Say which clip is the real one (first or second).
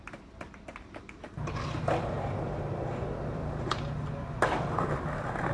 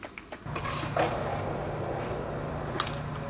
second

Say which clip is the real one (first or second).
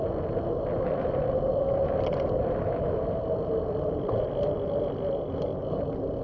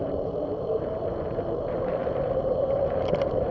first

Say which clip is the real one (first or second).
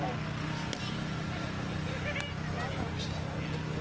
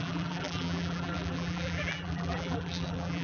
first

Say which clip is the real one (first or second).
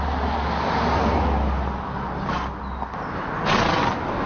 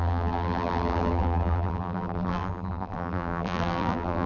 first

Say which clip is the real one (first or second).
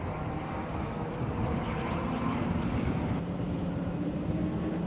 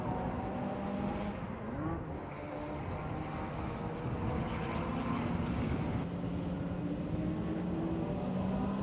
second